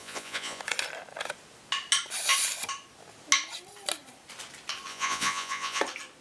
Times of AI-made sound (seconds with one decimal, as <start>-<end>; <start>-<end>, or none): 0.0-0.6; 4.9-5.8